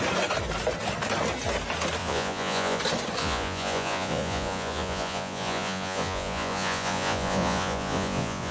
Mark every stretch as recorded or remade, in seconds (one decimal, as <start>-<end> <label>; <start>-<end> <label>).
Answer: 0.0-2.0 recorded; 2.0-2.8 remade; 2.8-3.2 recorded; 3.2-8.5 remade